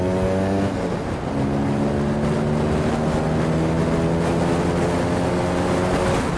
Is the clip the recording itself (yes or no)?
yes